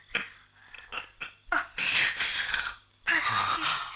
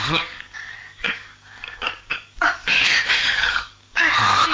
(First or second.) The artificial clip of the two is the second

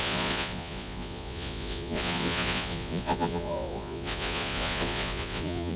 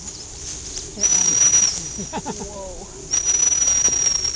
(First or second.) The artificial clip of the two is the first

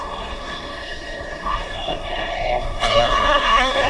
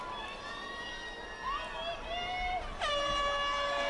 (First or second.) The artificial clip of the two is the first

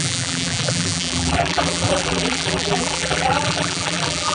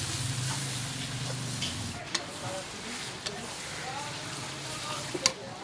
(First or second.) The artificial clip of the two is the first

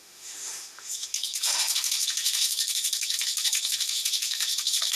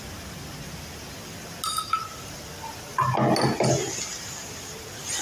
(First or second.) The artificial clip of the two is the first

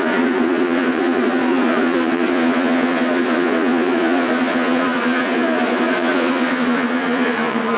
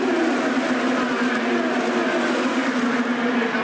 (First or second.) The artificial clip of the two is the first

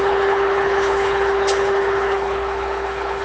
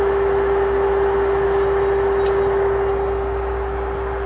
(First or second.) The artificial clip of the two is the first